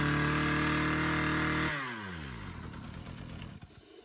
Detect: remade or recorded recorded